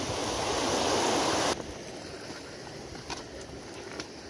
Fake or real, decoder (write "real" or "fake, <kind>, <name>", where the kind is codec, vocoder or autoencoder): real